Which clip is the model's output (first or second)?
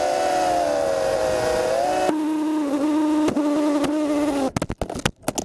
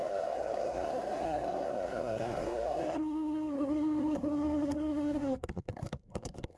second